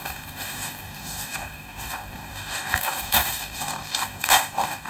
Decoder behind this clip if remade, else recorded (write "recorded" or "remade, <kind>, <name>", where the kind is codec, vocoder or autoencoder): remade, codec, DAC